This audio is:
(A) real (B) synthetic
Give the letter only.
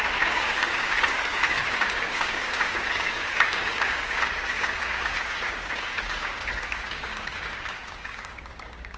B